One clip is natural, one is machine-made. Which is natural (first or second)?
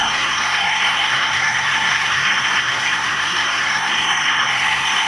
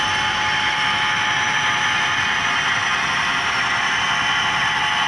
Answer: second